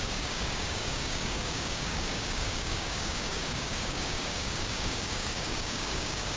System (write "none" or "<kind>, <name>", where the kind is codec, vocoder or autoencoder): codec, DAC